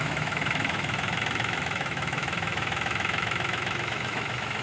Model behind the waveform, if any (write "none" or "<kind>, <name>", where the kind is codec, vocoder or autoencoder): autoencoder, DAC-VAE